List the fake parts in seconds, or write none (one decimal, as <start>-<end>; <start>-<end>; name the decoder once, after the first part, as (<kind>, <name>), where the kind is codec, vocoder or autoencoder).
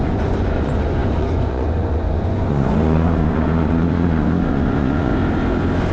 0.0-5.1 (vocoder, Vocos)